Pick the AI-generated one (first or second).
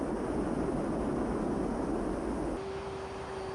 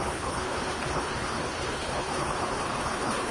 second